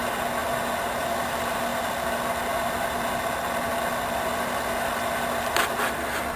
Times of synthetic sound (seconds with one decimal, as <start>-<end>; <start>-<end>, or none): 1.7-3.0; 3.7-5.4